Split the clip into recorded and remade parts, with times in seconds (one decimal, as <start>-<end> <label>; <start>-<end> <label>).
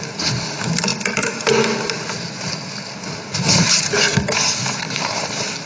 0.0-5.7 recorded